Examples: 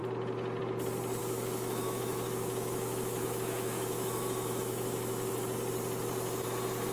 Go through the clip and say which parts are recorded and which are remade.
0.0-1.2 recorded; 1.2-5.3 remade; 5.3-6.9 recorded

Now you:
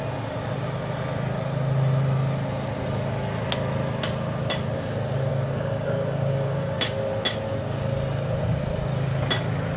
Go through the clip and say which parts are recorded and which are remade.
0.0-5.3 recorded; 5.3-6.8 remade; 6.8-9.8 recorded

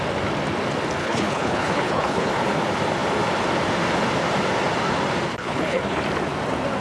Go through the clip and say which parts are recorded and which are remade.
0.0-1.0 recorded; 1.0-2.3 remade; 2.3-5.3 recorded; 5.3-6.0 remade; 6.0-6.8 recorded

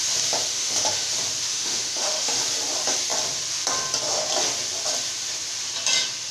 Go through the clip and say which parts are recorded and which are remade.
0.0-0.5 recorded; 0.5-1.1 remade; 1.1-1.5 recorded; 1.5-2.4 remade; 2.4-6.3 recorded

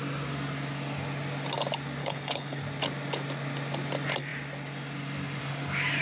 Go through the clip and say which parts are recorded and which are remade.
0.0-2.0 recorded; 2.0-2.6 remade; 2.6-6.0 recorded